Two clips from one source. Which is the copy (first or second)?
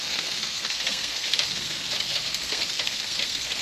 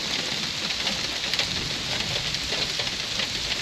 first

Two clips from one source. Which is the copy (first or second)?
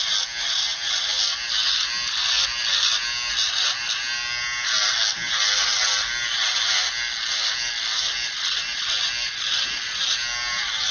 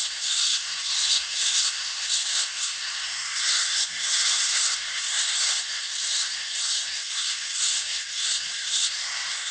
second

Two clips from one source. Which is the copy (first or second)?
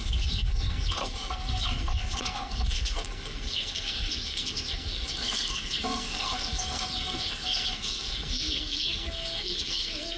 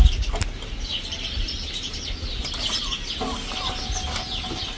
first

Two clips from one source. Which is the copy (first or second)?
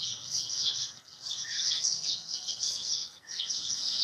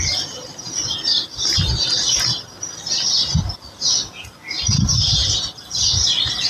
first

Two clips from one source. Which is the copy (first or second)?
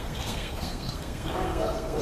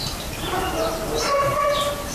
first